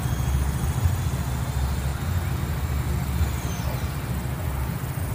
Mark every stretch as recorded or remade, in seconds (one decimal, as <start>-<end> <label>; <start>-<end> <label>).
0.0-5.1 recorded